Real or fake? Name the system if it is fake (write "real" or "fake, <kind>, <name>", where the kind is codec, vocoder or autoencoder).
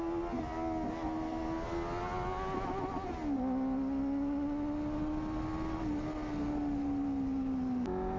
real